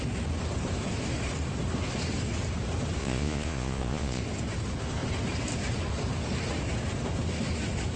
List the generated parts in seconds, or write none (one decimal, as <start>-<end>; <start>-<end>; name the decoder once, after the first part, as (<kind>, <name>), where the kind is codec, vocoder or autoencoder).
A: 3.0-4.2 (vocoder, Vocos)